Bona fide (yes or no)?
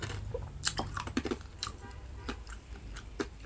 no